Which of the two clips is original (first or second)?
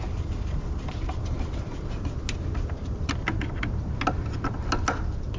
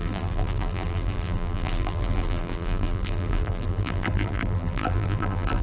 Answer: first